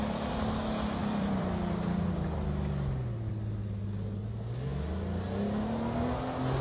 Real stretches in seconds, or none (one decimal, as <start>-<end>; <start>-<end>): 0.0-1.0; 2.1-6.6